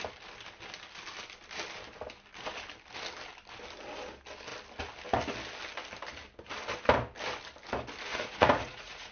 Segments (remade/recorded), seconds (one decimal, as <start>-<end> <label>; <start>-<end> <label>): 0.0-8.1 recorded; 8.1-9.1 remade